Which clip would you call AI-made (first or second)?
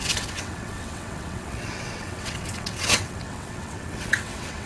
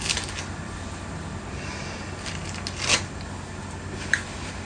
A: first